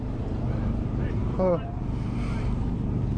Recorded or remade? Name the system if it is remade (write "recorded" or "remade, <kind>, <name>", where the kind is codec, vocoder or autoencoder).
remade, vocoder, BigVGAN v2